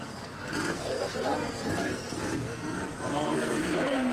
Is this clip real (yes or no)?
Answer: no